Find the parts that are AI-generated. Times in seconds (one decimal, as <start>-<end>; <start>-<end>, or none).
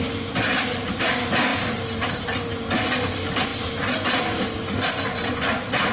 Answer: none